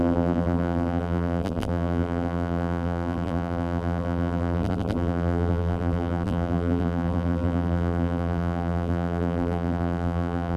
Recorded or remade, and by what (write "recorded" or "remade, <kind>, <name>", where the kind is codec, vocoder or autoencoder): remade, vocoder, BigVGAN v2